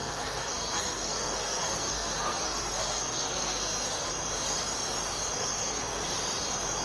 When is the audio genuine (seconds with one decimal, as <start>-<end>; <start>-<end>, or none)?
4.1-5.4; 6.1-6.8